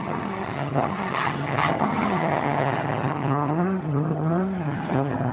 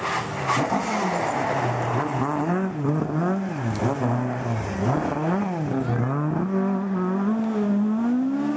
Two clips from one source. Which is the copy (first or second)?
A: first